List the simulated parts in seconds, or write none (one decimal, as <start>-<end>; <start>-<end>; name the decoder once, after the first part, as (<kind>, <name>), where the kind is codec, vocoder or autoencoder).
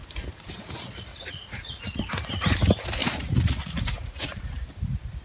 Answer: 1.1-1.9 (vocoder, Vocos); 3.0-4.5